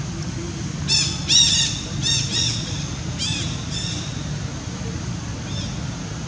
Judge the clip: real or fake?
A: real